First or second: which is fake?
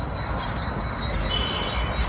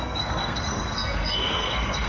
second